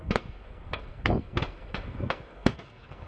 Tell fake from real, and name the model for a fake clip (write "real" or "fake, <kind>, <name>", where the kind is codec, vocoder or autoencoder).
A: fake, codec, SNAC